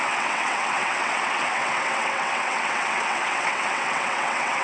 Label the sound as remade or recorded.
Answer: remade